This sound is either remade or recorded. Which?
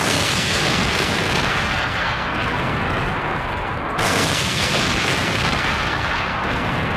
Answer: remade